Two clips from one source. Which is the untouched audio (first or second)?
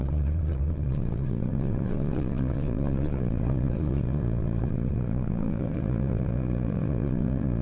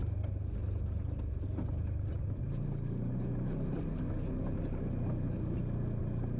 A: second